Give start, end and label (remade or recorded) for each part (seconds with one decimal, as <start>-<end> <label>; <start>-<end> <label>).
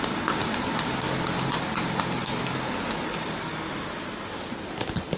0.0-0.4 recorded; 0.4-1.0 remade; 1.0-5.2 recorded